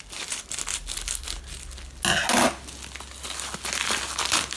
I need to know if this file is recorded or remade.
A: recorded